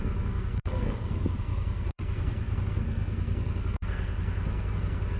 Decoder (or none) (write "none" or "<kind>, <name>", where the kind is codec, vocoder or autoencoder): codec, SNAC